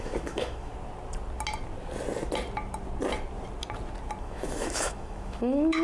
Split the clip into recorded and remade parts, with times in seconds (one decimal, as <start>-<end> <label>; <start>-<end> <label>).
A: 0.0-0.7 remade; 0.7-4.2 recorded; 4.2-5.8 remade